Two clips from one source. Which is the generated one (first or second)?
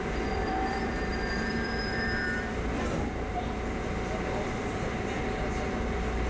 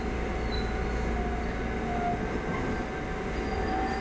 first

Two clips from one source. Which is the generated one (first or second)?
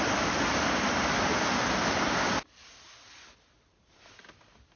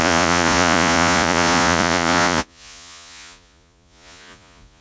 second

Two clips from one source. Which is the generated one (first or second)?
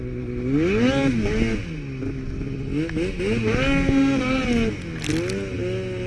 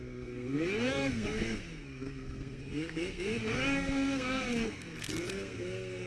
second